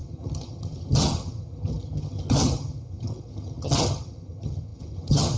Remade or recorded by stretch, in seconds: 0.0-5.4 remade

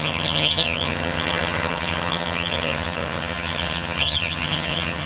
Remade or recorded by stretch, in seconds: 0.0-5.1 remade

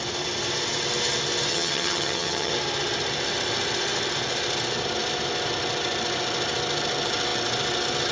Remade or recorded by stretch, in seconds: 0.0-1.5 recorded; 1.5-2.5 remade; 2.5-8.1 recorded

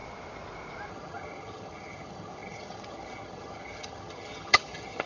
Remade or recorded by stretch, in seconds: 0.0-0.9 recorded; 0.9-5.1 remade

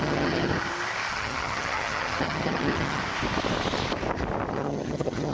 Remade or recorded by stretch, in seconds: 0.0-0.5 remade; 0.5-1.1 recorded; 1.1-3.0 remade; 3.0-4.5 recorded; 4.5-5.3 remade

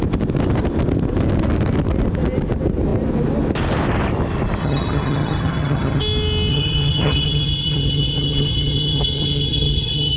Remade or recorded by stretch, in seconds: 0.0-4.6 recorded; 4.6-6.0 remade; 6.0-6.5 recorded; 6.5-10.2 remade

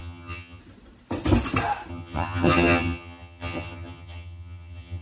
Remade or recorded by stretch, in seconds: 0.0-0.6 remade; 0.6-1.9 recorded; 1.9-5.0 remade